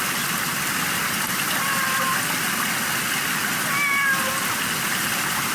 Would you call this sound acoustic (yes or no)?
yes